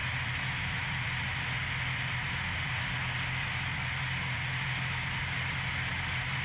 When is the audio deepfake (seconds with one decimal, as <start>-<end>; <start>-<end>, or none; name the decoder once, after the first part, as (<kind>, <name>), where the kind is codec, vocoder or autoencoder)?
none